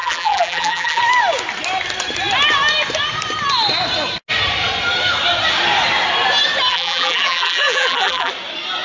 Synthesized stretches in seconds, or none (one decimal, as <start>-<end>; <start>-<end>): 0.0-1.0; 6.7-8.3